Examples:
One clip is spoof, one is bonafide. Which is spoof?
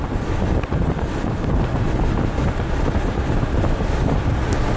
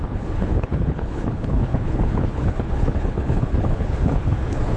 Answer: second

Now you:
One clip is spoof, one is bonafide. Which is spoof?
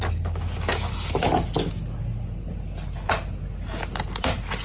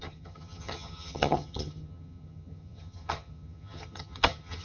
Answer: second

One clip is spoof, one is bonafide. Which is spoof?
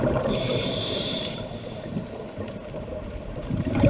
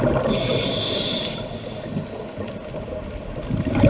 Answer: first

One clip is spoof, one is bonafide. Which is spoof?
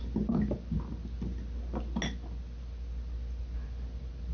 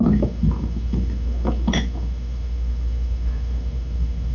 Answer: second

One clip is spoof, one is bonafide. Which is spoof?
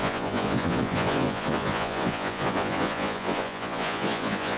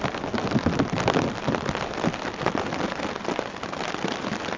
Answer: first